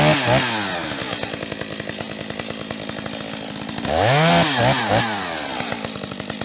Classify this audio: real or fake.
real